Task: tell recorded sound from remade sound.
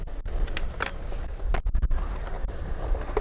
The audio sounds recorded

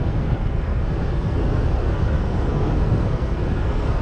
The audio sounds remade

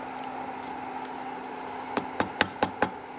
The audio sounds recorded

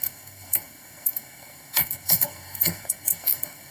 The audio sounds remade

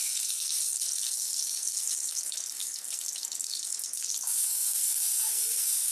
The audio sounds remade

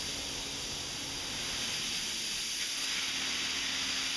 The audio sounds recorded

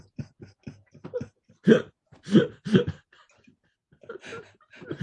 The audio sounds recorded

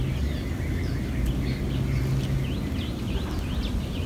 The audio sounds recorded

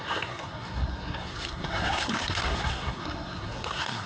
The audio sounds remade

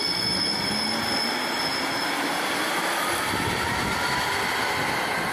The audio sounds recorded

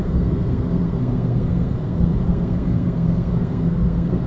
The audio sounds remade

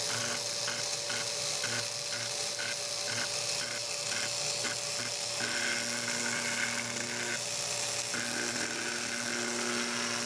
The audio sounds recorded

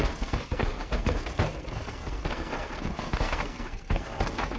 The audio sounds remade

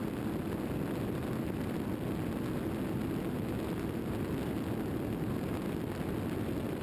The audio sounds recorded